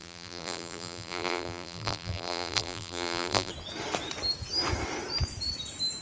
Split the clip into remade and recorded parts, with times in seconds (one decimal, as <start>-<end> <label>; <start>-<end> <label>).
0.0-3.5 remade; 3.5-6.0 recorded